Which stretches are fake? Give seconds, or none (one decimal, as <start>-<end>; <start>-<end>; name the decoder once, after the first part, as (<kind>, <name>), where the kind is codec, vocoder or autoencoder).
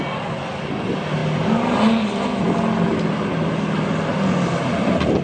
none